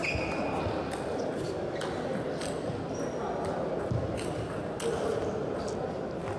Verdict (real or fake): real